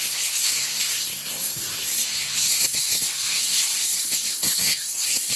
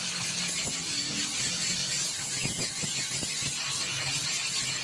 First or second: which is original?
second